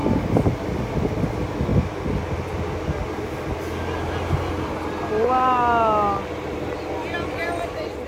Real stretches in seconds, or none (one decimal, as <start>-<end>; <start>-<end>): 0.5-8.1